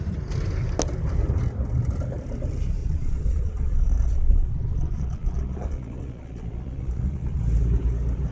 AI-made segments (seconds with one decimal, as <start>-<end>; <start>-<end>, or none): 2.8-7.4